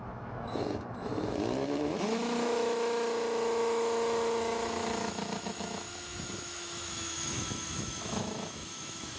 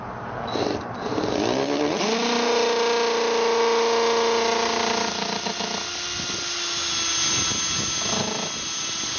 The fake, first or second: first